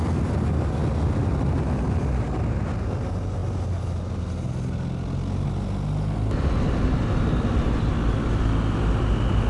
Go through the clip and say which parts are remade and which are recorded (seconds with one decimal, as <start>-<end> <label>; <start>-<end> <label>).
0.0-9.5 recorded